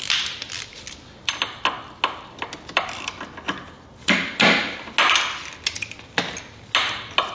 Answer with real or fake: real